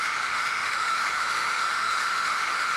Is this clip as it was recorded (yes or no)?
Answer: no